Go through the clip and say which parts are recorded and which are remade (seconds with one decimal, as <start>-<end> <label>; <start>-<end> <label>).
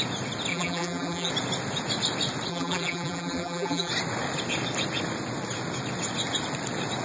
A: 0.0-0.5 recorded; 0.5-1.3 remade; 1.3-2.5 recorded; 2.5-3.9 remade; 3.9-7.0 recorded